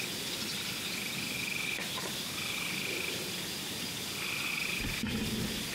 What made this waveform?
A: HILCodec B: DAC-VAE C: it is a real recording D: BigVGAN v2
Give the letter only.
C